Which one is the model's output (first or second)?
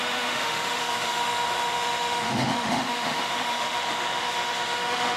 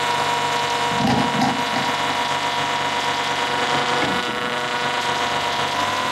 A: first